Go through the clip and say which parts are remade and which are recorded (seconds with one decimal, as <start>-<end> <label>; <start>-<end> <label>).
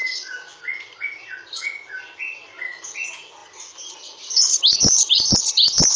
0.0-6.0 recorded